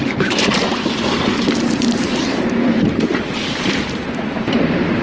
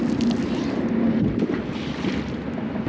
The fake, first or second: first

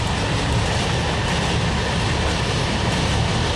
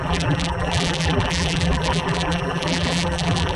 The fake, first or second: second